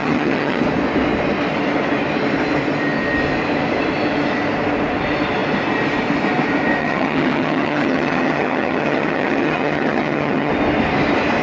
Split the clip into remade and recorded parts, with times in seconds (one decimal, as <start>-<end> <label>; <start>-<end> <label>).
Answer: 0.0-0.6 remade; 0.6-6.8 recorded; 6.8-10.5 remade; 10.5-11.4 recorded